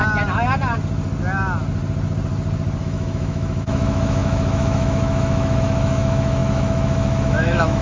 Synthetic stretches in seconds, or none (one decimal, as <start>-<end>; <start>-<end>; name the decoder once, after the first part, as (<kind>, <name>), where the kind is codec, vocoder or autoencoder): 2.8-7.8 (autoencoder, DAC-VAE)